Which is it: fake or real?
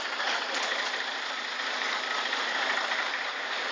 fake